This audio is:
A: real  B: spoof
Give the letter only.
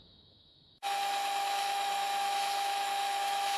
B